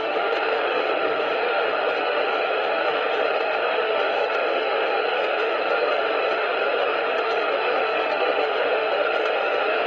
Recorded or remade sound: remade